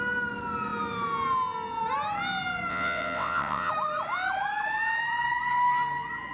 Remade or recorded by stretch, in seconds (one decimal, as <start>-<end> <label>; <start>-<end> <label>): 0.0-2.7 recorded; 2.7-3.7 remade; 3.7-6.3 recorded